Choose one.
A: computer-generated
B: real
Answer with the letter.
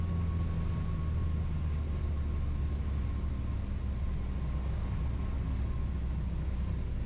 B